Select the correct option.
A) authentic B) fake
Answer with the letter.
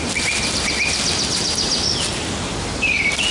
A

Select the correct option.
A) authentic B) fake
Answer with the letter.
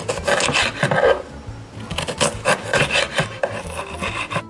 A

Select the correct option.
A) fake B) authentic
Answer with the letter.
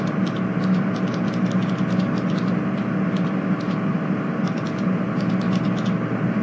B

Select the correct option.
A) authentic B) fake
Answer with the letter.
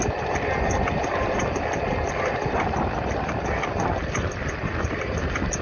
A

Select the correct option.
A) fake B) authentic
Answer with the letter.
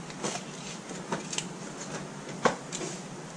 B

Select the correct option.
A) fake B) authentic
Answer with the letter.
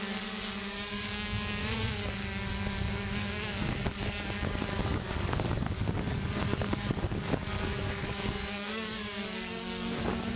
A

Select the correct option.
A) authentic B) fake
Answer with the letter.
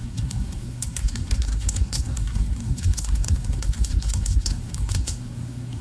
B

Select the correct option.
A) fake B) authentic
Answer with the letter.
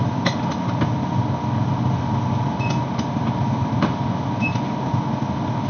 B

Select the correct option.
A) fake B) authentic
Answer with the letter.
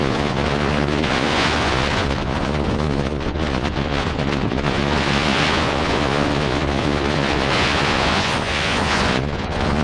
A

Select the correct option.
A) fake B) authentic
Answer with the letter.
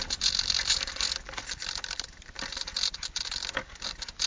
B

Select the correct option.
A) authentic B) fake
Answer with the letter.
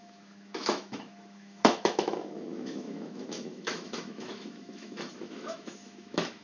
B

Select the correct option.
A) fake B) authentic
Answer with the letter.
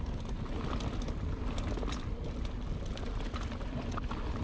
B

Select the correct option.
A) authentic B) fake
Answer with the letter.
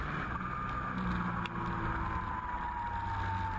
A